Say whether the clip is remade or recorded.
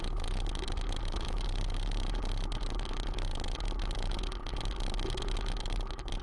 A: recorded